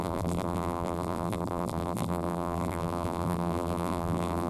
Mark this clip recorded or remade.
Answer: remade